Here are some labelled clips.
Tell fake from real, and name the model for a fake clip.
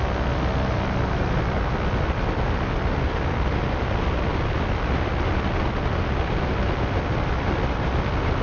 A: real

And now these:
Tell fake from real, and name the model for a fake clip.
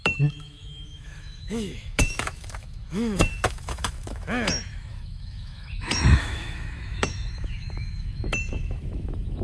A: fake, autoencoder, DAC-VAE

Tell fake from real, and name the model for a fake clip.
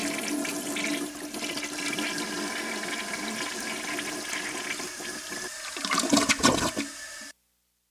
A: real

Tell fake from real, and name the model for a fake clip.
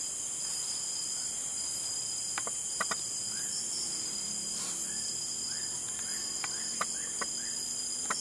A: real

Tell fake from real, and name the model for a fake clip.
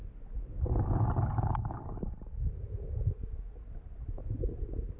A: real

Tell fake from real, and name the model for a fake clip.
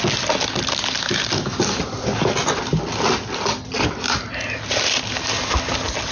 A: real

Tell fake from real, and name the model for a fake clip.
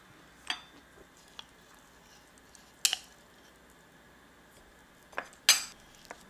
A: real